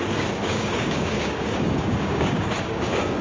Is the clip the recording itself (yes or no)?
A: no